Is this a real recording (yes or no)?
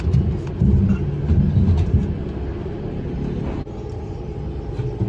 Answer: yes